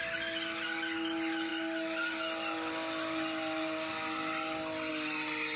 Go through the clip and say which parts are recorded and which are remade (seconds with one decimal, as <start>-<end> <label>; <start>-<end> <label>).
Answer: 0.0-5.6 recorded